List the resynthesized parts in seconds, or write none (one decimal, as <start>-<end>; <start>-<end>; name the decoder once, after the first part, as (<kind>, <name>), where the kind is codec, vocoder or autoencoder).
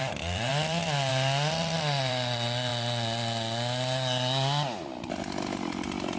0.0-2.7 (vocoder, BigVGAN v2); 5.2-6.2